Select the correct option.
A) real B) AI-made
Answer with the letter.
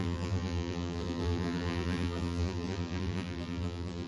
B